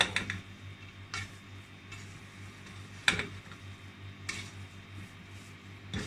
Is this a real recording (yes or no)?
yes